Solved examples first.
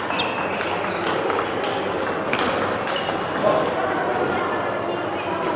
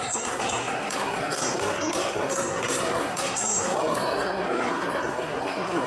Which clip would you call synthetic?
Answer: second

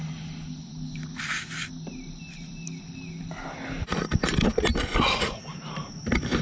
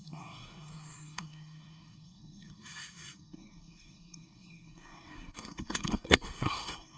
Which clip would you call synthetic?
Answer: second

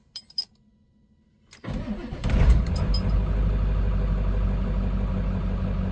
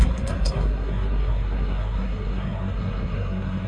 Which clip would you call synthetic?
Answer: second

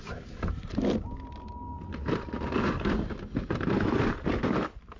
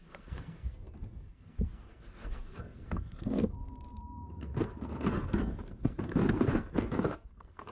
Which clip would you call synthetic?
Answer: second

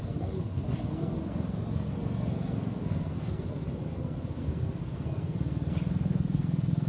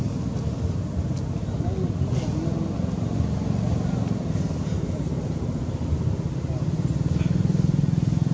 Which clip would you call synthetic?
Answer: first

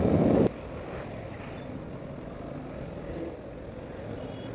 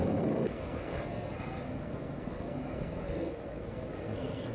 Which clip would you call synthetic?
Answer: second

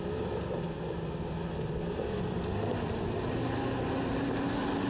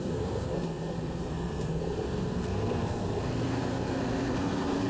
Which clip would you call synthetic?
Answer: second